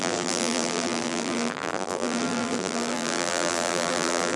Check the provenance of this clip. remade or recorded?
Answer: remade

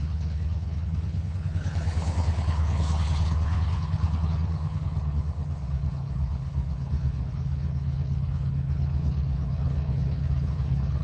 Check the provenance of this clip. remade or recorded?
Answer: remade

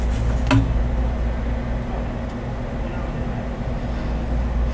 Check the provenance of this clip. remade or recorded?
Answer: recorded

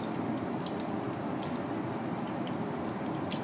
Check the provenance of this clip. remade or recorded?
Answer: recorded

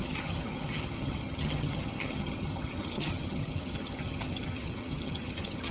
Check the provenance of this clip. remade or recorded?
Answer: remade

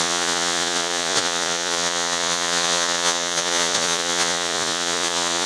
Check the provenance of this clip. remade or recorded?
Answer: remade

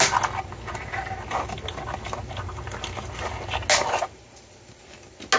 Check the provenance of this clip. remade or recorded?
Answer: recorded